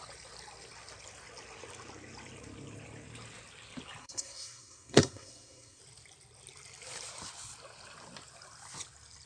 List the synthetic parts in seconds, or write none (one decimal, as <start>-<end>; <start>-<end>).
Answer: 4.0-5.8

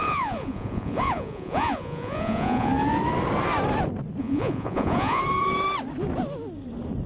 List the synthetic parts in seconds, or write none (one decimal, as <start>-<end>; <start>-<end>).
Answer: 0.0-2.7; 4.2-5.2